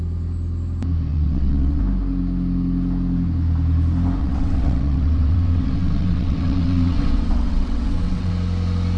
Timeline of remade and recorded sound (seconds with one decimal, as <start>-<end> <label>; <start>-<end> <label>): 0.0-1.1 recorded; 1.1-1.8 remade; 1.8-4.2 recorded; 4.2-8.3 remade; 8.3-9.0 recorded